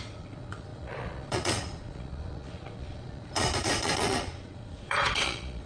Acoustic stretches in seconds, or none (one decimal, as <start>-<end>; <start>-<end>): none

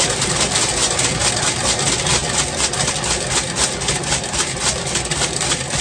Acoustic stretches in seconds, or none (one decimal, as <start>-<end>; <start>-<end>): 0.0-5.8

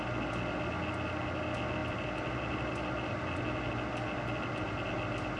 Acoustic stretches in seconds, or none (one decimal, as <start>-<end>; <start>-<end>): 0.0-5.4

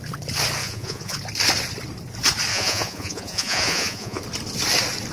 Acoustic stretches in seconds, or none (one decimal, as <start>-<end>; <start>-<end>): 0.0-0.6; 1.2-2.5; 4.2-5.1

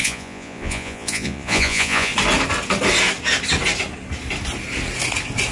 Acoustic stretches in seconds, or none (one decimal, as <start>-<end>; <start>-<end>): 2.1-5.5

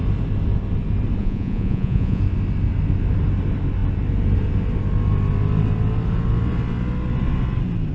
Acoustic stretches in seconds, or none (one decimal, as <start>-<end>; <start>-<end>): 0.0-1.2; 2.2-7.9

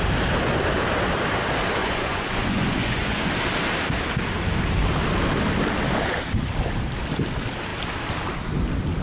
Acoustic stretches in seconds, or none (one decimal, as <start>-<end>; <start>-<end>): 0.0-1.8; 3.3-9.0